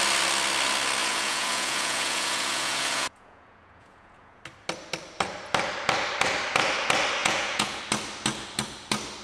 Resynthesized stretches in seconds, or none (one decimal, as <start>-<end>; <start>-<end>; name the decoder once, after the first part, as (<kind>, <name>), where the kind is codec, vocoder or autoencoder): 1.0-4.4 (vocoder, Vocos); 7.2-7.8